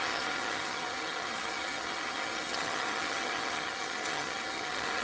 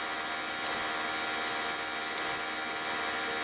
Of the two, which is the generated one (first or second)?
first